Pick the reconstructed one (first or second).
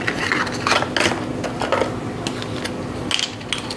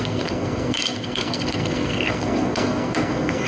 second